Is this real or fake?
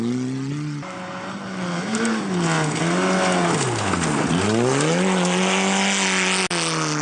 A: real